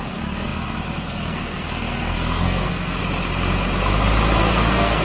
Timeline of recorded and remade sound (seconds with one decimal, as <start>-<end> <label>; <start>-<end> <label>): 0.0-3.0 remade; 3.0-4.4 recorded; 4.4-5.0 remade